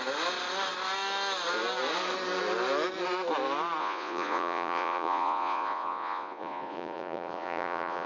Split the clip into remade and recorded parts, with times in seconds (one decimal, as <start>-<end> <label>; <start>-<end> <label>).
0.0-3.8 recorded; 3.8-8.1 remade